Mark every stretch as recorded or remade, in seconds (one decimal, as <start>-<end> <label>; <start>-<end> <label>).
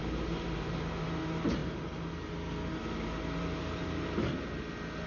0.0-1.0 remade; 1.0-5.1 recorded